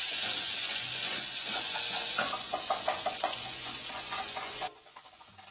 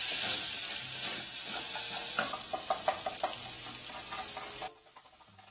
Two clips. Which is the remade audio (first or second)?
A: first